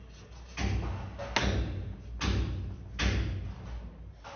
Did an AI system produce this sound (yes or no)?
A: no